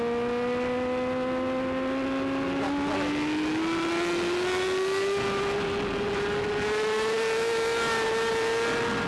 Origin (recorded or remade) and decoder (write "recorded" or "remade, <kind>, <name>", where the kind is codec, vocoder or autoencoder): recorded